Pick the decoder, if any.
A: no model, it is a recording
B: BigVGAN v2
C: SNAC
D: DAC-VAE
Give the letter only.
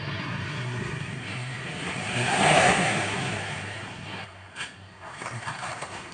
C